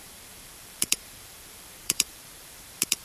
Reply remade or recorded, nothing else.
remade